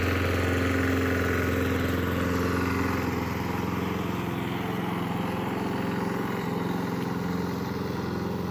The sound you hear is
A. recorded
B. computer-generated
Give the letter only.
A